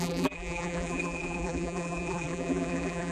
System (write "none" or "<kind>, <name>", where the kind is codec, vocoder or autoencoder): vocoder, BigVGAN v2